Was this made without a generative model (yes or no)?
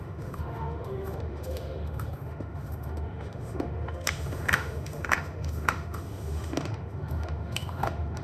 no